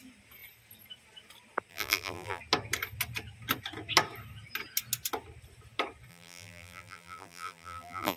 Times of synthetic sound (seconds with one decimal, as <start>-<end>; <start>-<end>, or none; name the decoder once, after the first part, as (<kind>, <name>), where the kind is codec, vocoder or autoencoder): 1.7-2.4 (vocoder, BigVGAN v2); 6.1-8.2